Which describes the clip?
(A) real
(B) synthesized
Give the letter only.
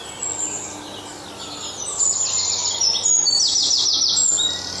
A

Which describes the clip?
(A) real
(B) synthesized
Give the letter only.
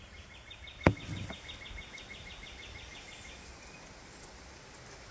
A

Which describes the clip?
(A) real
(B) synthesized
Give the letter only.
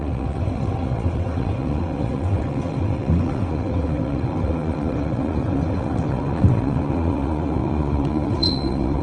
B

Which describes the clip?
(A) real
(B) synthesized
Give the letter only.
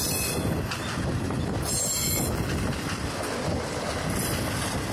A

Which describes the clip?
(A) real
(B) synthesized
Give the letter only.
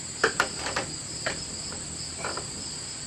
A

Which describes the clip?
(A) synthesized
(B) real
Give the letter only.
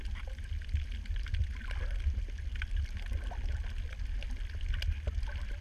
B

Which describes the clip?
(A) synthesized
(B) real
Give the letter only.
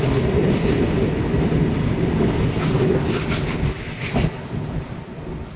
B